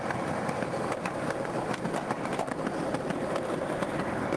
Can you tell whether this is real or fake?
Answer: fake